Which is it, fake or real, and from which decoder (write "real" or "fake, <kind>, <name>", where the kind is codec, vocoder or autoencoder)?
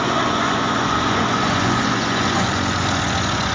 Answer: fake, vocoder, Vocos